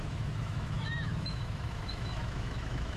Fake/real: fake